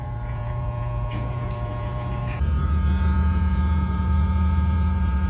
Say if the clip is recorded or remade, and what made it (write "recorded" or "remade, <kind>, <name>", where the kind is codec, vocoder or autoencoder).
remade, vocoder, Vocos